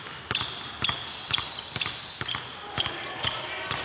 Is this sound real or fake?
real